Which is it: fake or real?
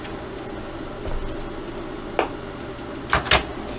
real